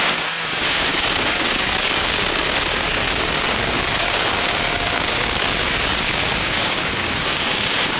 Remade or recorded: remade